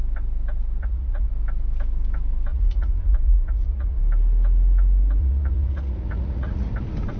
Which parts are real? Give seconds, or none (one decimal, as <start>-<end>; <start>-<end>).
0.0-0.8; 1.3-2.5; 4.0-5.2; 6.7-7.2